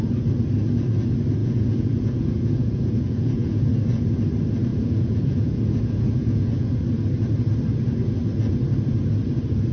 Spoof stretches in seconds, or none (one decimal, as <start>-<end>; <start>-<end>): 1.4-3.7; 4.7-6.7